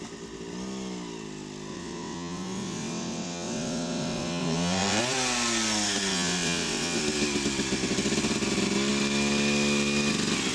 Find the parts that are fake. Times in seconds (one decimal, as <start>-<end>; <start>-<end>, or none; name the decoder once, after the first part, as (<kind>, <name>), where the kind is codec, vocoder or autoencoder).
1.7-5.0 (vocoder, WaveNeXt); 6.1-7.0